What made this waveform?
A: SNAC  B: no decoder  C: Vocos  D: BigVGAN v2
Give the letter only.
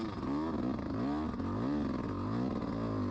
B